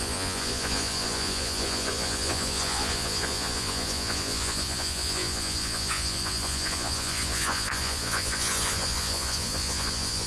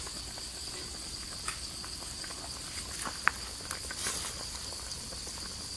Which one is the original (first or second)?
second